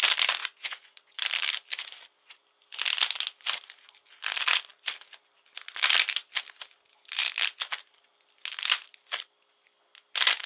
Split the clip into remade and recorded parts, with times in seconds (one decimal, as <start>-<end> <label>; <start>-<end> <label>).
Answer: 0.0-0.4 recorded; 0.4-1.2 remade; 1.2-10.5 recorded